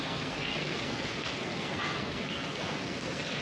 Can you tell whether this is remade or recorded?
remade